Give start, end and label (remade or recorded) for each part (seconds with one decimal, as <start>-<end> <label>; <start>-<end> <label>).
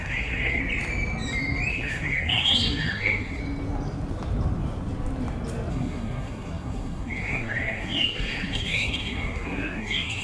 0.0-0.6 remade; 0.6-1.7 recorded; 1.7-3.4 remade; 3.4-5.7 recorded; 5.7-10.2 remade